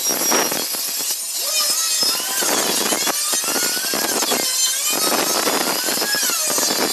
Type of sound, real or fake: real